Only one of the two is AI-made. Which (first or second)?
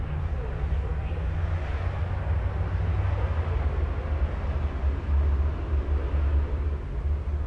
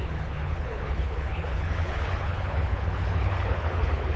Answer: second